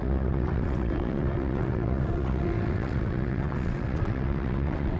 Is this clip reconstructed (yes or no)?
yes